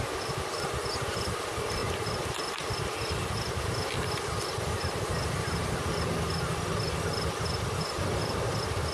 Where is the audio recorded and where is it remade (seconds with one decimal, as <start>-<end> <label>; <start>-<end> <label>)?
0.0-8.9 recorded